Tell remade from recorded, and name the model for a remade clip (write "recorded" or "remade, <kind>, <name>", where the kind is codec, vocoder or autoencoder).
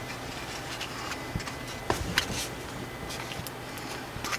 recorded